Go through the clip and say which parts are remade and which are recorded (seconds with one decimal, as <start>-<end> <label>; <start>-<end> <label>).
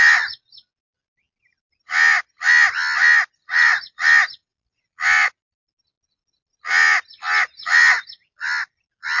0.0-9.2 recorded